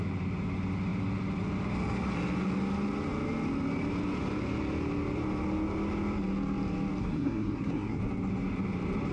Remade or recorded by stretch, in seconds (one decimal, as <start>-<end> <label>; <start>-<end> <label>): 0.0-7.0 recorded; 7.0-8.0 remade; 8.0-9.1 recorded